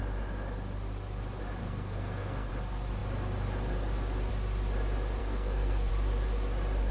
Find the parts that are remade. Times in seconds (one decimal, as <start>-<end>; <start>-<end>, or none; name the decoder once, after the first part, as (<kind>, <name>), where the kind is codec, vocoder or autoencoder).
1.6-2.5 (codec, SNAC); 5.2-5.9